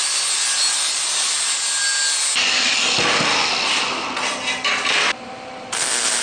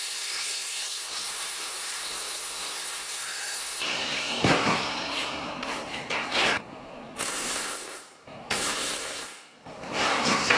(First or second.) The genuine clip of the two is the first